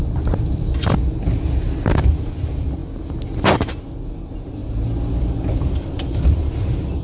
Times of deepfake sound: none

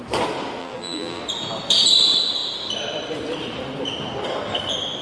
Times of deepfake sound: 0.6-1.2 (vocoder, BigVGAN v2)